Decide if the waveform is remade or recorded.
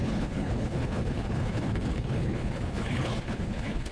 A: remade